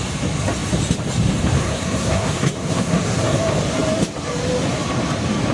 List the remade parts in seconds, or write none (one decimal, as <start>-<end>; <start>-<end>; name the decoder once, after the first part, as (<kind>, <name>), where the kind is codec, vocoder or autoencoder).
1.6-3.4 (codec, SNAC)